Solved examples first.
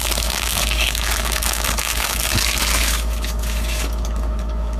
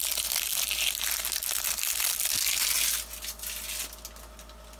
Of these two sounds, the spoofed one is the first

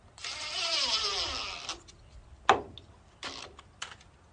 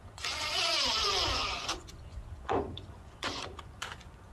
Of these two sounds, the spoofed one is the second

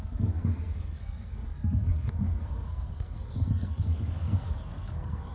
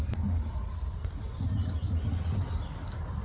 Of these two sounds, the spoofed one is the first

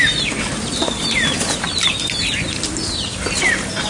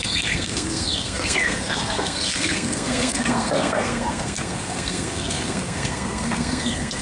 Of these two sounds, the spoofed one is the second